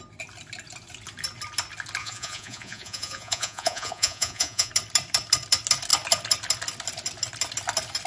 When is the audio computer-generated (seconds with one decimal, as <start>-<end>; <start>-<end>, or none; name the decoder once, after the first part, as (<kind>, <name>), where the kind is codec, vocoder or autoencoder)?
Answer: 2.0-4.7 (vocoder, Vocos)